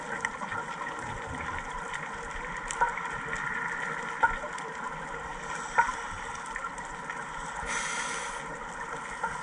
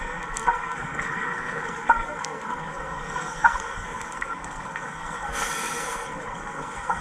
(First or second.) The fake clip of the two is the second